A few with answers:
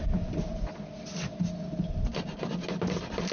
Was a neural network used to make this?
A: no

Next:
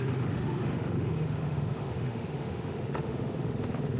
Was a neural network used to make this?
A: yes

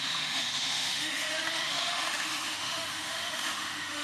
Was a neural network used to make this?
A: yes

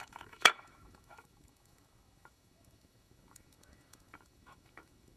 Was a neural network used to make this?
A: yes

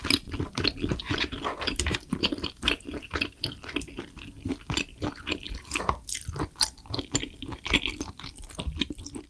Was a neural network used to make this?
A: no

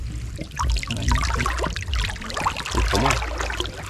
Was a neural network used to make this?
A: no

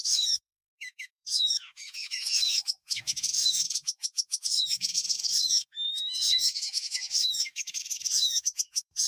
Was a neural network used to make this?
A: yes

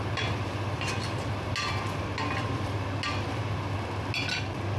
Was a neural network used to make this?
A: no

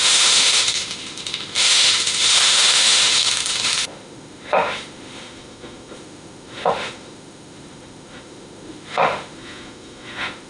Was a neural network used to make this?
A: yes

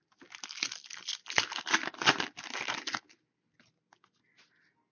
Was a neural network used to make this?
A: no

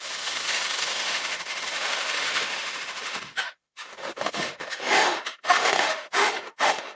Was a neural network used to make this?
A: yes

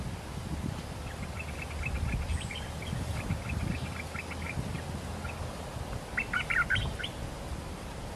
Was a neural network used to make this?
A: no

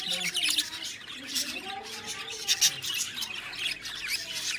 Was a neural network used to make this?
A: no